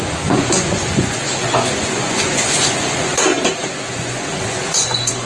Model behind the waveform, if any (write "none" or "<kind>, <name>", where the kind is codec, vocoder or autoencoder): vocoder, Vocos